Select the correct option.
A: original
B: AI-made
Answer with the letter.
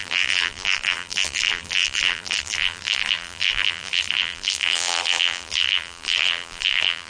B